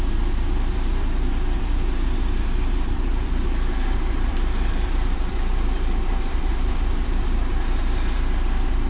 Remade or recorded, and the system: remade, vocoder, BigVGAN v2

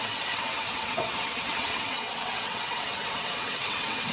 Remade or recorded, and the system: remade, vocoder, WaveNeXt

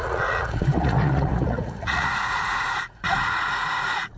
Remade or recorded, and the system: remade, vocoder, Vocos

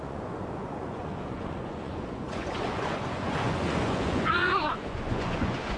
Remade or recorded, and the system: remade, vocoder, Vocos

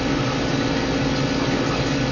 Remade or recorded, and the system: recorded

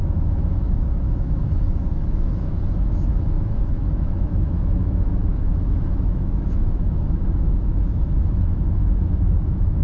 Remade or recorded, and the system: remade, autoencoder, DAC-VAE